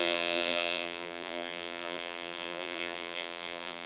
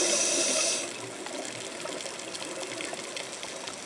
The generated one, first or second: first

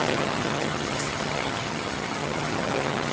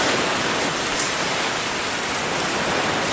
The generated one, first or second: first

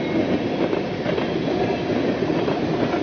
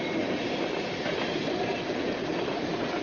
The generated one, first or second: second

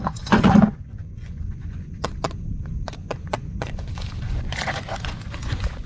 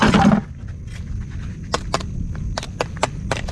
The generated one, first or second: first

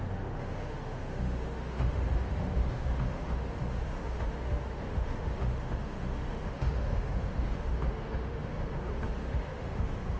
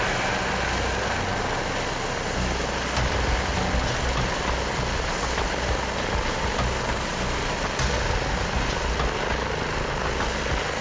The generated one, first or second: first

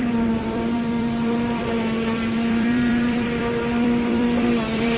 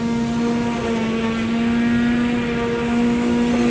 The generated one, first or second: first